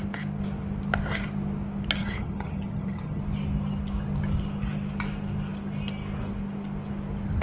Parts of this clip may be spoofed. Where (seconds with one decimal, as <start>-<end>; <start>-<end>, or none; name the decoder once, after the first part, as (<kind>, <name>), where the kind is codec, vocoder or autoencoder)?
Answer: 2.0-3.2 (vocoder, HiFi-GAN)